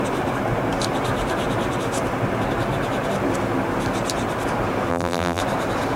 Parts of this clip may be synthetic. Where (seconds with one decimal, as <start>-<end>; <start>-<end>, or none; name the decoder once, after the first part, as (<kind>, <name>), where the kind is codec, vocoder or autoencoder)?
4.9-5.4 (vocoder, BigVGAN v2)